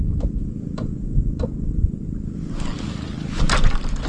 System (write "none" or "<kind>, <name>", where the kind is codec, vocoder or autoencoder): none